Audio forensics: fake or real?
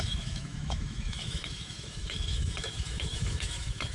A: fake